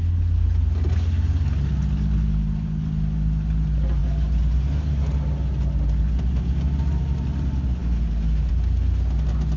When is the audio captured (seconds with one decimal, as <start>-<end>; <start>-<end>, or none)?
0.0-9.6